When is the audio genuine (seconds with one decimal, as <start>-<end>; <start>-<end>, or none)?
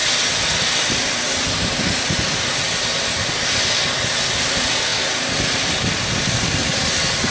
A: 0.0-7.3